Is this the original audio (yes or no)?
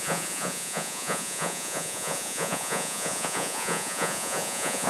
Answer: no